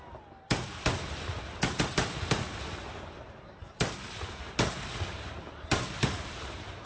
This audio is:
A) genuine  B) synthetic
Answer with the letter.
A